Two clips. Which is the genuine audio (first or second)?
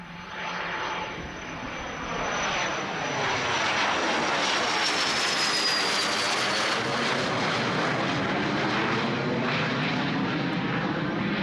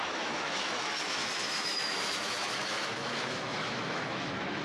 first